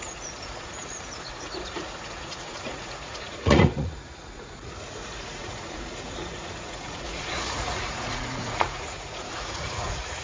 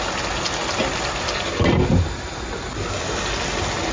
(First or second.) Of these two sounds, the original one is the second